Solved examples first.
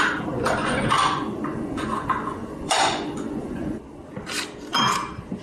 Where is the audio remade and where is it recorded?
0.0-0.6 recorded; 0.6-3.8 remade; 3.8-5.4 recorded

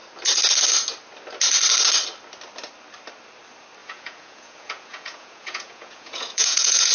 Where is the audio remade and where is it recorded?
0.0-3.8 recorded; 3.8-6.9 remade

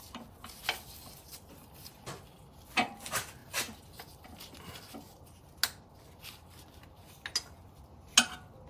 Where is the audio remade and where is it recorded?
0.0-1.3 recorded; 1.3-1.9 remade; 1.9-8.7 recorded

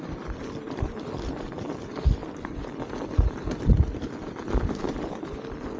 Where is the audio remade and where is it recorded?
0.0-5.8 recorded